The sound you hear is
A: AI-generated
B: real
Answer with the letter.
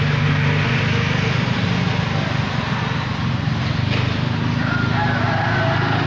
B